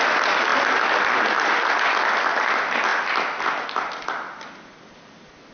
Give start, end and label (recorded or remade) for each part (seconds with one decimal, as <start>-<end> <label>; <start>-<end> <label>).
0.0-5.5 recorded